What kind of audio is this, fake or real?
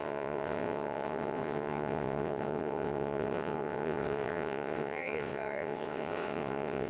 fake